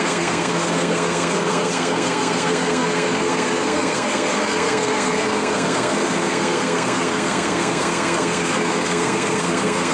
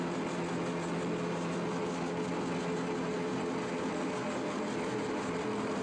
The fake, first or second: first